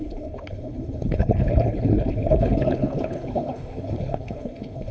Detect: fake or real fake